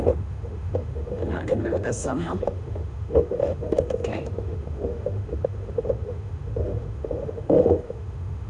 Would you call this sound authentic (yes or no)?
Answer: no